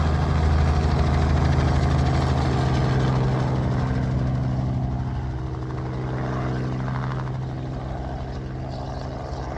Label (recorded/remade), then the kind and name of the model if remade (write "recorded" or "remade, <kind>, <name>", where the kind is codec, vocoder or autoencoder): recorded